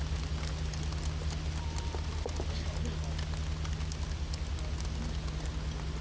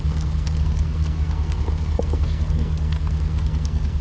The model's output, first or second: second